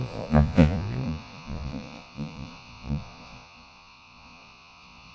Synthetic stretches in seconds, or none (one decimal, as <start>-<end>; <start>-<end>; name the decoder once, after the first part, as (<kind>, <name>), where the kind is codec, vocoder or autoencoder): 0.0-5.1 (vocoder, Vocos)